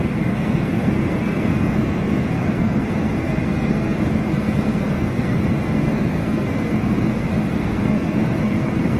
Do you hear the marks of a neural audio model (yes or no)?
yes